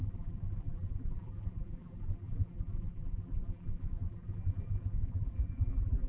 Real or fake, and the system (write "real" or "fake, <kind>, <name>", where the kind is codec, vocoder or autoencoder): fake, vocoder, BigVGAN v2